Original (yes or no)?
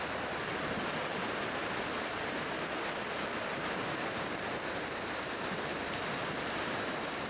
yes